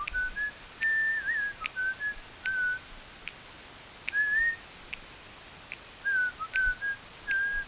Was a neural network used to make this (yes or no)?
no